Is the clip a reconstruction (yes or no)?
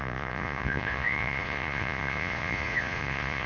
yes